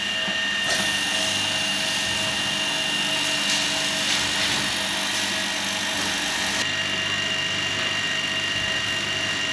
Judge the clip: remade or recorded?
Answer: recorded